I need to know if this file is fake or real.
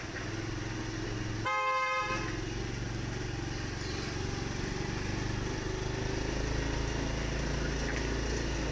real